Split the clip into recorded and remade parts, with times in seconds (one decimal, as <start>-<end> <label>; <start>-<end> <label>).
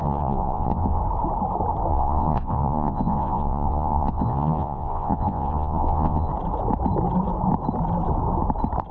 0.0-1.0 remade; 1.0-1.9 recorded; 1.9-6.3 remade; 6.3-8.9 recorded